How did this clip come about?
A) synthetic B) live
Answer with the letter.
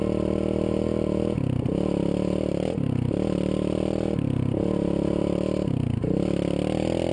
B